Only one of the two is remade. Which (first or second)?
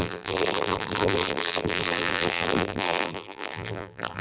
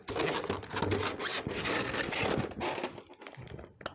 first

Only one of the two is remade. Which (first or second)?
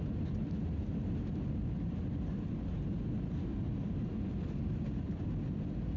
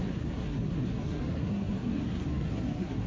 second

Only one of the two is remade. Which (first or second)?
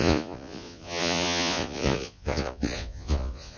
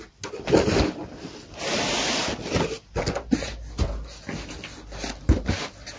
first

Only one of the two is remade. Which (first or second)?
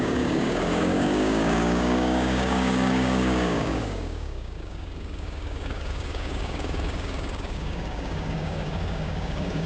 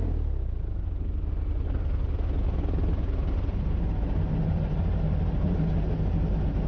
first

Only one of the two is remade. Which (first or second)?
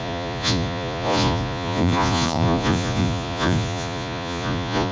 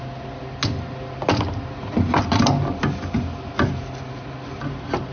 first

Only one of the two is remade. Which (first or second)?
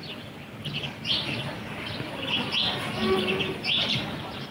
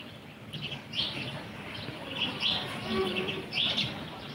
second